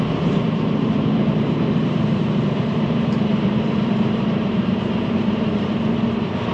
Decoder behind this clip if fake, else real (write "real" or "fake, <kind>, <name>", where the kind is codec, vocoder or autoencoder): fake, vocoder, BigVGAN v2